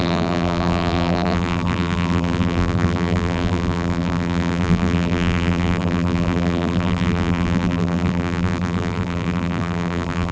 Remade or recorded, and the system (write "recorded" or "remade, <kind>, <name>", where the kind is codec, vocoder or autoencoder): remade, vocoder, BigVGAN v2